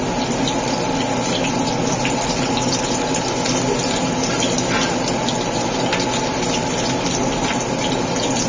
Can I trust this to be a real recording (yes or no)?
yes